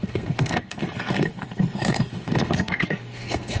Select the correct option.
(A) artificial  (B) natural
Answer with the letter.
A